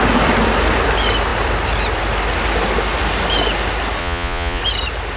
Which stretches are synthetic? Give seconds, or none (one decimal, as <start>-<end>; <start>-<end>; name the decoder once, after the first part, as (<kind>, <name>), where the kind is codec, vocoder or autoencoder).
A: 4.0-4.6 (vocoder, Vocos)